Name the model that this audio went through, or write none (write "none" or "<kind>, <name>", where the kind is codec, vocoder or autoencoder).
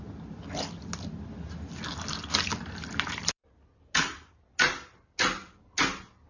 none